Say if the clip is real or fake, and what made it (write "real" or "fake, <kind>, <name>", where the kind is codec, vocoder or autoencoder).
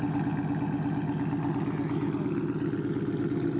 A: real